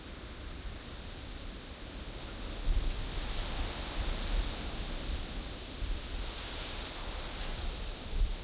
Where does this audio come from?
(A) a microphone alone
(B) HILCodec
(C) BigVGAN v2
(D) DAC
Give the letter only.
A